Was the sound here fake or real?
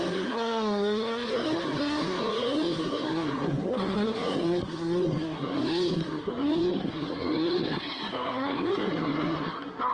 fake